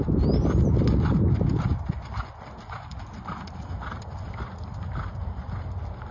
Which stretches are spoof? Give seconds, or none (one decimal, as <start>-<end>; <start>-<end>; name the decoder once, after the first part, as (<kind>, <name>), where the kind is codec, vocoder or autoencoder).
none